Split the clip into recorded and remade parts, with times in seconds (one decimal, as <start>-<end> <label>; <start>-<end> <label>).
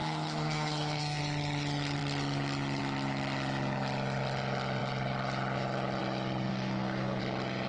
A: 0.0-1.2 remade; 1.2-6.5 recorded; 6.5-7.2 remade; 7.2-7.7 recorded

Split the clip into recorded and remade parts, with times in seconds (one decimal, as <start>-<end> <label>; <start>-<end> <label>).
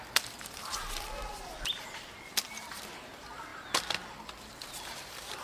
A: 0.0-5.4 recorded